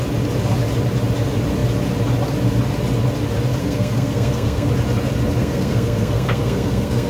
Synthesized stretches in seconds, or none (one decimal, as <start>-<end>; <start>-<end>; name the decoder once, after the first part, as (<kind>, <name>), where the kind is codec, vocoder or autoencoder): 3.6-4.7 (codec, SNAC); 5.4-7.1